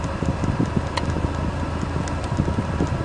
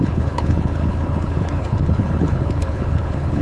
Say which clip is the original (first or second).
first